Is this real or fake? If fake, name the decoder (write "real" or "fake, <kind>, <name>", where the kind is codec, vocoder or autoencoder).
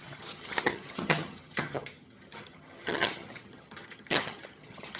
fake, vocoder, HiFi-GAN